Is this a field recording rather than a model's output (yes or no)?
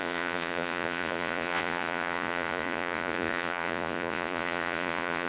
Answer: no